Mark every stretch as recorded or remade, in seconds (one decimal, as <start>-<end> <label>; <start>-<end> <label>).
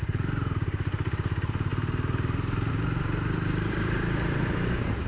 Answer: 0.0-1.7 remade; 1.7-2.7 recorded; 2.7-5.1 remade